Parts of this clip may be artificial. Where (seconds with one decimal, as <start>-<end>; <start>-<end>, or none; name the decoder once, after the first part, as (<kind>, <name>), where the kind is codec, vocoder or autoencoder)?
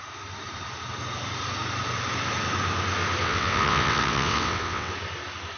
3.2-4.9 (vocoder, WaveNeXt)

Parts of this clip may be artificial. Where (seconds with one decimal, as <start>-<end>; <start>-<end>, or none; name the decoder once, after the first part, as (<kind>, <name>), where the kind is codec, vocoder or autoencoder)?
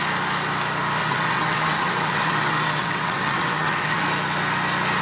1.0-4.0 (vocoder, WaveNeXt)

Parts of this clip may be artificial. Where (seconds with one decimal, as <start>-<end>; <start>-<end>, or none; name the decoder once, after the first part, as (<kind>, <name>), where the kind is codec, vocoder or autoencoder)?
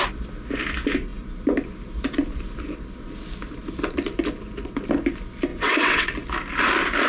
5.5-6.1 (vocoder, WaveNeXt)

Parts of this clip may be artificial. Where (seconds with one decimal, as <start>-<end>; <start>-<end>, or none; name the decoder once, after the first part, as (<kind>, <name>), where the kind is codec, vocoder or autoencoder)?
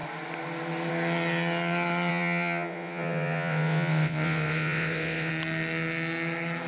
2.1-5.3 (vocoder, WaveNeXt)